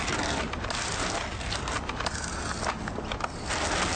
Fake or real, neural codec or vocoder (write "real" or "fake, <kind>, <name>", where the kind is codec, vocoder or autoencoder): real